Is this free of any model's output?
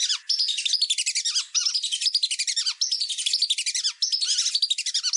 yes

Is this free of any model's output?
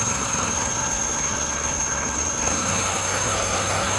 no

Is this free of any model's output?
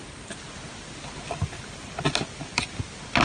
yes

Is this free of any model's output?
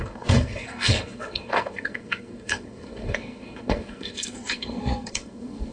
no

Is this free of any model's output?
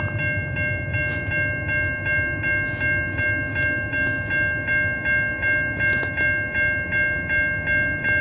yes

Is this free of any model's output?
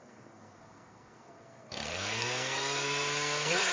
no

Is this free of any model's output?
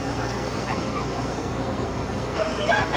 no